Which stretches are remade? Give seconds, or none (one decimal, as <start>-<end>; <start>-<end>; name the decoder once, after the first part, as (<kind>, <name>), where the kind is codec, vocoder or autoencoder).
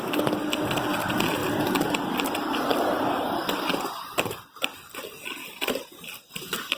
1.4-2.3 (vocoder, BigVGAN v2); 2.7-4.9; 5.4-6.8